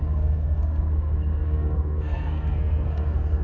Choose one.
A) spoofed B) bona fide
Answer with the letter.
A